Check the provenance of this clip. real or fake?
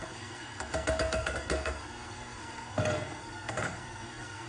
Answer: fake